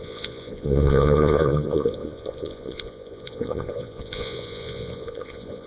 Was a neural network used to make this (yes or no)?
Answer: yes